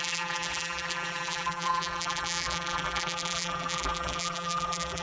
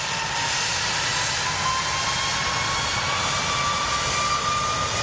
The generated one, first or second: first